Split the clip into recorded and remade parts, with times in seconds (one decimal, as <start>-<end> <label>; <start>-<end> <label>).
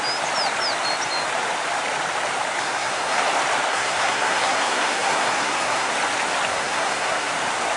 0.0-2.6 recorded; 2.6-3.2 remade; 3.2-3.7 recorded; 3.7-5.9 remade; 5.9-6.5 recorded; 6.5-7.3 remade; 7.3-7.8 recorded